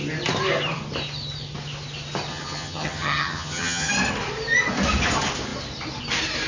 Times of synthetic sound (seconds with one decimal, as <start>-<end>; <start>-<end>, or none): 2.3-3.9